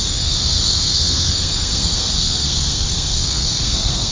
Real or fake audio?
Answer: fake